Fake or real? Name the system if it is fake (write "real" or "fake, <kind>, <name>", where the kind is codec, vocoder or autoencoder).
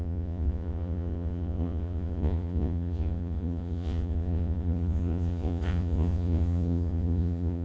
fake, vocoder, Vocos